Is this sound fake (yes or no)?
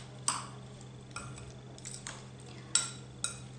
no